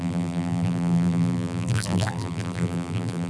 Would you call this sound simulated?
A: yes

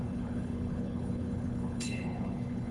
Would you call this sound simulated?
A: yes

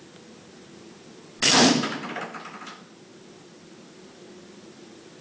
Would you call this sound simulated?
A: no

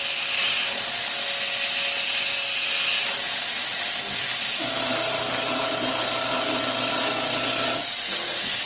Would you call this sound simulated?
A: no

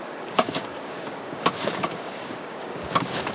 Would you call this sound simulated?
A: yes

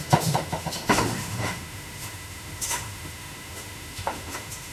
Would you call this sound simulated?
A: yes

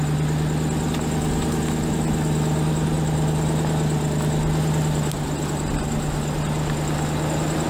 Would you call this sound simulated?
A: no